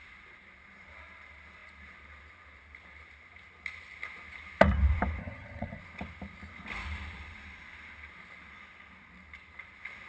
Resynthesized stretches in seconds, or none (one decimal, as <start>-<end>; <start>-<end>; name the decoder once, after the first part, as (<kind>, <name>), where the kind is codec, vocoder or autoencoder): 5.2-5.8 (vocoder, HiFi-GAN)